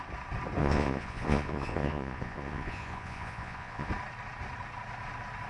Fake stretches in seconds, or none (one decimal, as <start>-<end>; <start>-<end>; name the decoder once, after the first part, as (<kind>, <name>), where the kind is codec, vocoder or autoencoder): 0.6-3.9 (vocoder, Vocos)